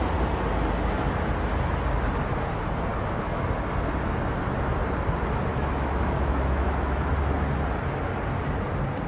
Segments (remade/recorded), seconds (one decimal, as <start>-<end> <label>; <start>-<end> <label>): 0.0-5.5 recorded; 5.5-7.1 remade; 7.1-9.1 recorded